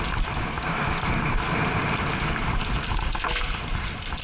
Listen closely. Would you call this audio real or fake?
real